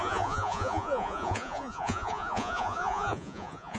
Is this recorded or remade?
remade